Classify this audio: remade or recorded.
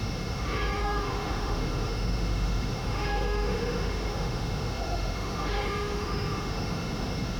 remade